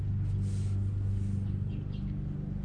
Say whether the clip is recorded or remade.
recorded